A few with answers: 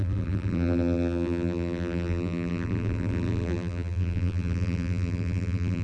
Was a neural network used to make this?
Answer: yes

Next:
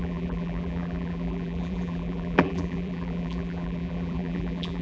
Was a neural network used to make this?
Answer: yes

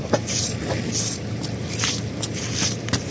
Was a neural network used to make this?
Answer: yes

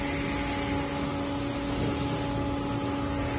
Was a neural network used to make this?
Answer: no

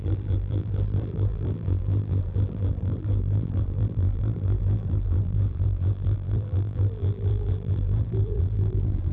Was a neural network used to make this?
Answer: yes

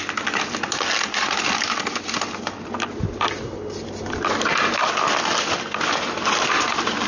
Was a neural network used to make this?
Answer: no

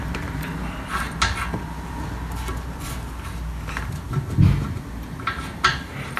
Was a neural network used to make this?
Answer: no